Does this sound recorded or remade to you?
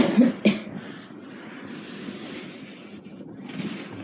recorded